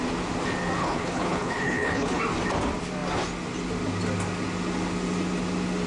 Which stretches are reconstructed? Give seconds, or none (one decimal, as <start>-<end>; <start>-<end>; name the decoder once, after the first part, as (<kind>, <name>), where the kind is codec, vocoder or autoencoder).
0.8-2.2 (codec, HILCodec)